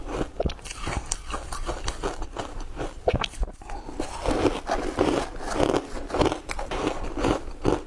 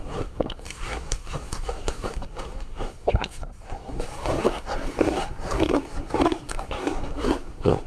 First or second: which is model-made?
second